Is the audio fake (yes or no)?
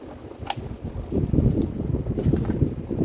no